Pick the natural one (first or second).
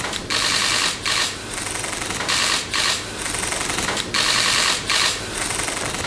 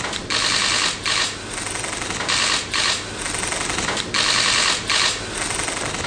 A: second